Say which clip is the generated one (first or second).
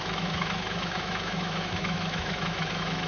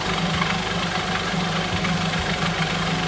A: first